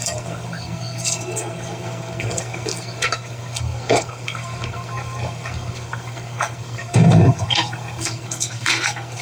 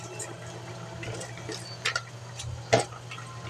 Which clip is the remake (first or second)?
first